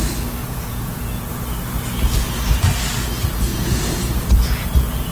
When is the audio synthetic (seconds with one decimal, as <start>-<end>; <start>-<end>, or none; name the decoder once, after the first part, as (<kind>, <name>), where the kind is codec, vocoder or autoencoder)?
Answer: 0.4-1.3 (vocoder, Vocos); 3.5-5.1